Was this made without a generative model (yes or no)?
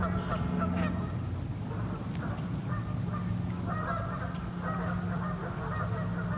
yes